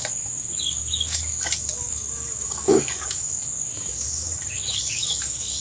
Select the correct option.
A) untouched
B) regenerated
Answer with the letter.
B